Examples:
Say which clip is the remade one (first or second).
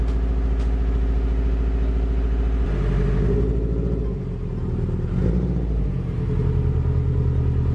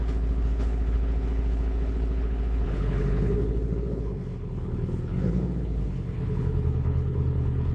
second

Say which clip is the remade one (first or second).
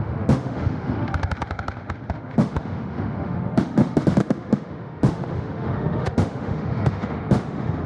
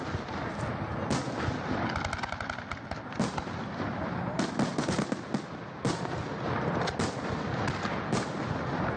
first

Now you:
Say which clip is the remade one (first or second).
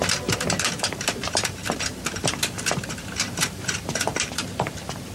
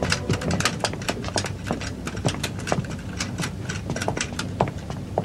first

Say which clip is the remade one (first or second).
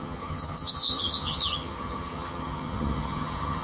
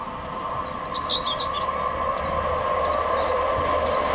first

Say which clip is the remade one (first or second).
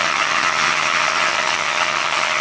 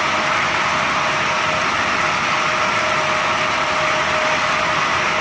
first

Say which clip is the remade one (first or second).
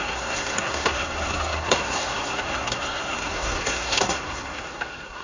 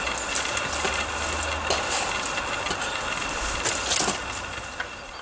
first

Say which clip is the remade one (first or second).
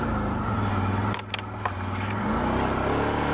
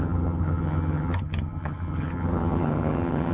second